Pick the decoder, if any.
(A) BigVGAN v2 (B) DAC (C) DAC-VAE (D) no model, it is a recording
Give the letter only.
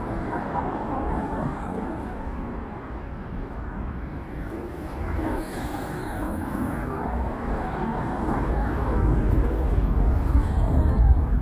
B